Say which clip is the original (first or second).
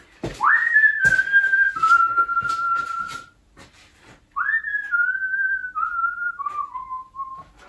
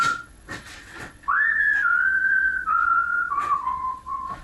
first